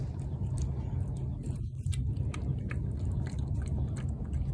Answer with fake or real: real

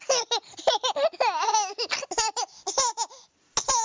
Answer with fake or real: real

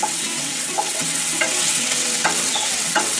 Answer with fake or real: fake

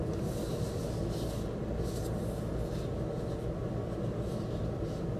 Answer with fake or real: real